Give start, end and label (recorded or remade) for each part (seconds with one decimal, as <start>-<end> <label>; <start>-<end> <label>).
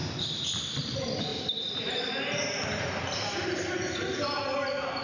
0.0-0.6 remade; 0.6-1.3 recorded; 1.3-3.7 remade; 3.7-5.0 recorded